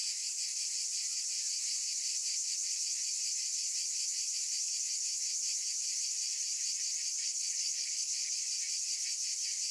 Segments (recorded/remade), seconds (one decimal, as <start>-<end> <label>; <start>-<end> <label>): 0.0-7.2 recorded; 7.2-8.4 remade; 8.4-9.7 recorded